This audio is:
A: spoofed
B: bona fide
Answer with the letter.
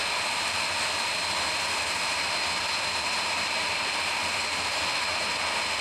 B